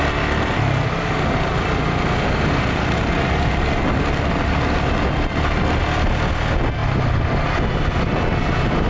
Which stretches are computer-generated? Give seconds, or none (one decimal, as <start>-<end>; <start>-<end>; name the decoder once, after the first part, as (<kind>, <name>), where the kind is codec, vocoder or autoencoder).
none